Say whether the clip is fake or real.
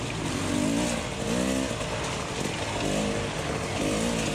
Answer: real